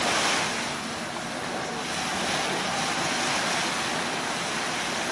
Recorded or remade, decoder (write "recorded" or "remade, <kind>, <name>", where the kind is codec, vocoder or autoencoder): recorded